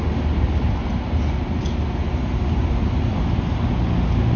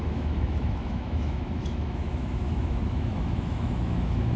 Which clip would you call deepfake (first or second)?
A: second